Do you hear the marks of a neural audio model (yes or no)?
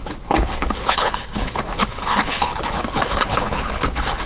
yes